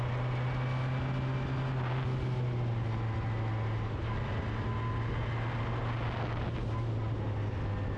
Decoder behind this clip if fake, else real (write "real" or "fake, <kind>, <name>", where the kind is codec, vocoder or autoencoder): real